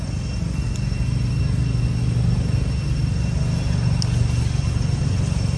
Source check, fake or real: real